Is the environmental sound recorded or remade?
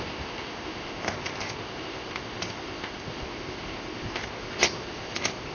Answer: remade